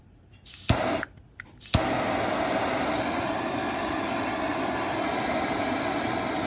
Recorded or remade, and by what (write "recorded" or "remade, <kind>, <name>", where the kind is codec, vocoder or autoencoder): recorded